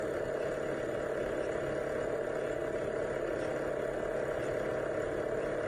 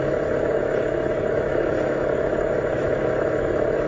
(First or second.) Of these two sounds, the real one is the first